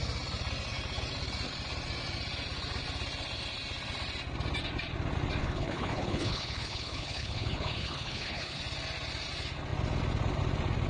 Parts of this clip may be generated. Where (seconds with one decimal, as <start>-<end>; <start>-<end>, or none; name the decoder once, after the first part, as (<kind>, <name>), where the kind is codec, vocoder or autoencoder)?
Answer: 5.4-8.6 (codec, HILCodec)